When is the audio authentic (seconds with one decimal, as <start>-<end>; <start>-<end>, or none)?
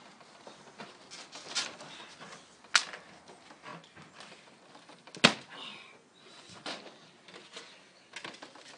0.0-5.7; 6.8-8.8